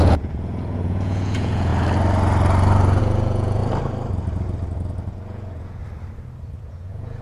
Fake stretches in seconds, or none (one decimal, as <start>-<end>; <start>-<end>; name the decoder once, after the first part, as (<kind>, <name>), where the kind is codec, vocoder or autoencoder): 0.0-1.7 (vocoder, Vocos); 3.0-3.6; 5.1-5.8; 6.6-7.2